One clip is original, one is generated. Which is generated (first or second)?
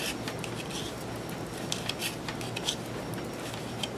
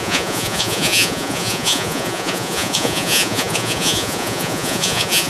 second